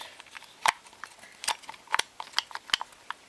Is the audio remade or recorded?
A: recorded